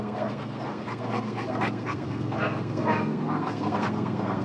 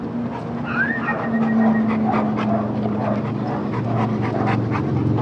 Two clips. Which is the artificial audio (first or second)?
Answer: first